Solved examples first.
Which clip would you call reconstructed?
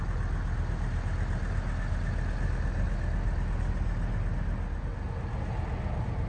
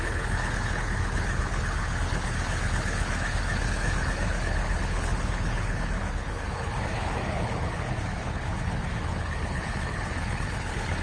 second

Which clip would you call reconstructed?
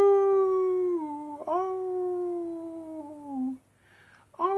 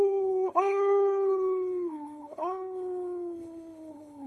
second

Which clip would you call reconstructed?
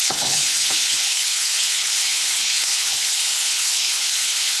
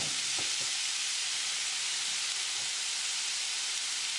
first